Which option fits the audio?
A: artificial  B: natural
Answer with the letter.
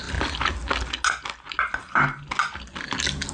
B